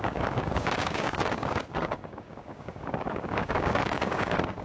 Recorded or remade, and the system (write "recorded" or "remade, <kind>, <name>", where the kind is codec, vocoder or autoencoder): remade, codec, DAC